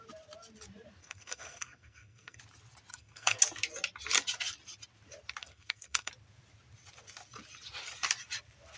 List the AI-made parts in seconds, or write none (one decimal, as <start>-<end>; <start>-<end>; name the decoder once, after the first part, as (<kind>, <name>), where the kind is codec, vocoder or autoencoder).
1.0-2.4 (codec, SNAC); 2.9-3.4; 5.4-6.1